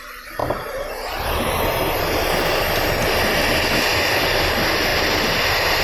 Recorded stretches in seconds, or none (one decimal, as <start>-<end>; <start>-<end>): 0.0-5.8